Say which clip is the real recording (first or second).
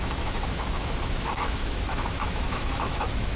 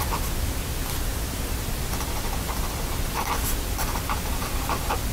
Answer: second